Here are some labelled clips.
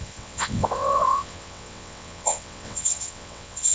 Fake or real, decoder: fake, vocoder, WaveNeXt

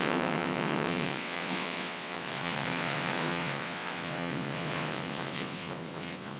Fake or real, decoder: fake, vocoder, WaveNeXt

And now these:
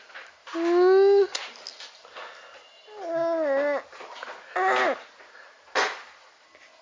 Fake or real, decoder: real